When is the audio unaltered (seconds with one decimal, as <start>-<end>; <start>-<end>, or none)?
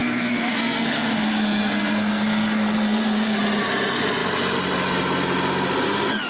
3.4-6.3